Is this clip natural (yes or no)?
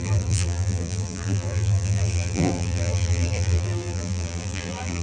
no